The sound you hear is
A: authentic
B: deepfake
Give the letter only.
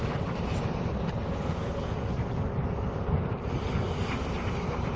A